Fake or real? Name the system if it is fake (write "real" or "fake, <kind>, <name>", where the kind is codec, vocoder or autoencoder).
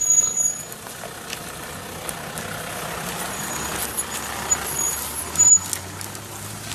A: real